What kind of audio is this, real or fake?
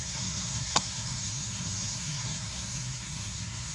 fake